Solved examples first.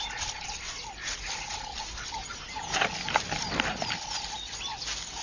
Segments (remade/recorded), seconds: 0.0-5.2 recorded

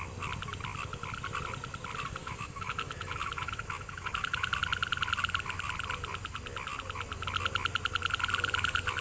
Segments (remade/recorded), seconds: 0.0-2.2 recorded; 2.2-4.5 remade; 4.5-9.0 recorded

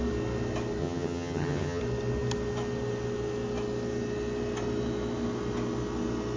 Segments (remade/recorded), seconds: 0.0-0.8 recorded; 0.8-1.8 remade; 1.8-6.4 recorded

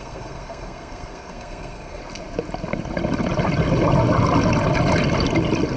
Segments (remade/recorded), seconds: 0.0-2.0 remade; 2.0-5.8 recorded

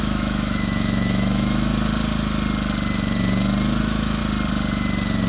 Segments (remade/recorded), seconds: 0.0-1.7 remade; 1.7-3.8 recorded; 3.8-4.2 remade; 4.2-5.3 recorded

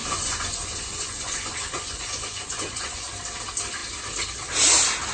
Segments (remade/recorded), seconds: 0.0-3.1 remade; 3.1-5.1 recorded